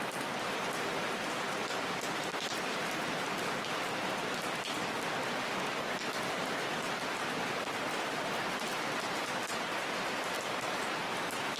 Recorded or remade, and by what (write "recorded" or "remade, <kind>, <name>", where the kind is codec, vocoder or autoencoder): recorded